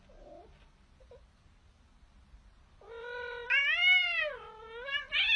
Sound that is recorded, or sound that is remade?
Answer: recorded